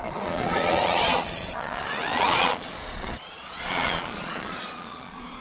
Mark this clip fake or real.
fake